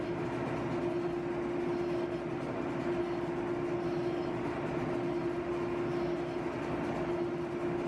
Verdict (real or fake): real